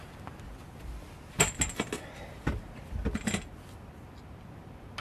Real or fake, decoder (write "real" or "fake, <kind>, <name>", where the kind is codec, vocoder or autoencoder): real